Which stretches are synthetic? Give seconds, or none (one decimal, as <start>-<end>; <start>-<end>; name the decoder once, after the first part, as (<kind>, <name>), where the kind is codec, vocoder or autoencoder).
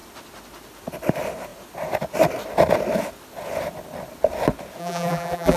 4.8-5.6 (vocoder, BigVGAN v2)